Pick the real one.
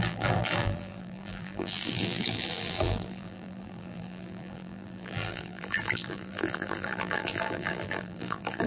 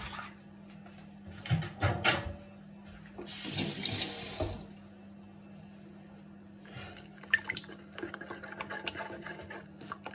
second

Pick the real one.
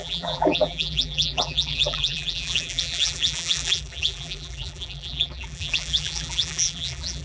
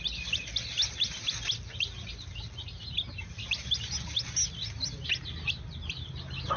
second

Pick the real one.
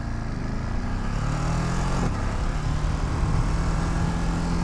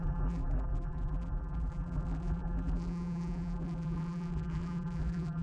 first